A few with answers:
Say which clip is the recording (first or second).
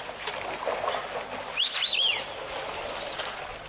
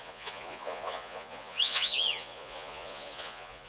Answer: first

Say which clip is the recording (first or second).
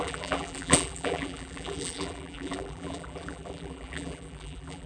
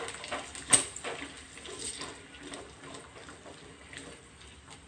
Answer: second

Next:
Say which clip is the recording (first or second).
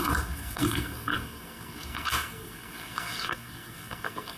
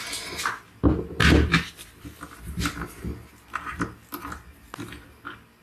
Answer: second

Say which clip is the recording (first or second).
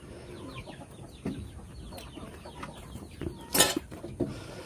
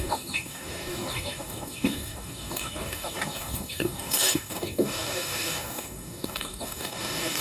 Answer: first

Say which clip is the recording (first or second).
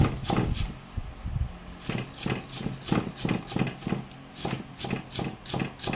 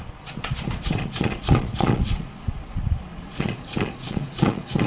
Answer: first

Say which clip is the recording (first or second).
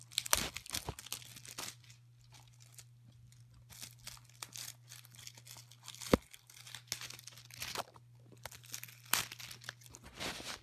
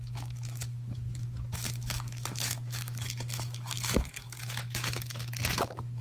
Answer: first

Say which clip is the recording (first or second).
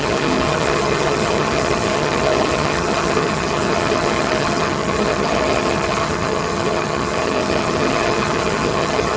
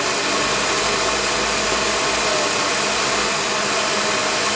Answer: second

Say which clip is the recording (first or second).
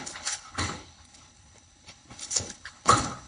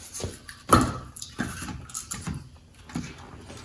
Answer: second